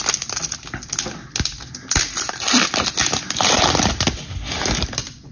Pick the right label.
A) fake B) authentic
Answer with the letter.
B